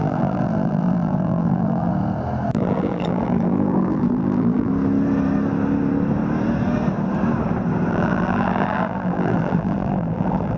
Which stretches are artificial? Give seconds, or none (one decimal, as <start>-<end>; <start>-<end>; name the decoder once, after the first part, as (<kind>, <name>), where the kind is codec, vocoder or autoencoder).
0.0-1.9 (vocoder, BigVGAN v2); 2.5-4.7; 7.9-10.6